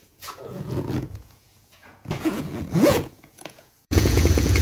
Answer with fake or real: fake